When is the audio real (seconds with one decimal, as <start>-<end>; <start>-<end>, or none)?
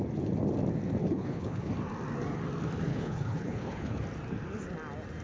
0.0-1.0; 1.7-2.9; 4.0-5.2